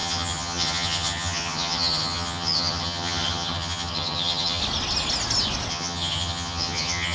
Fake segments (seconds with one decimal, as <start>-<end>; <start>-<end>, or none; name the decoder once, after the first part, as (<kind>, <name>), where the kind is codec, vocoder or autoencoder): 0.0-4.6 (vocoder, HiFi-GAN); 5.7-7.1